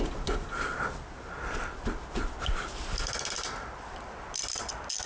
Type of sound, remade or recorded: recorded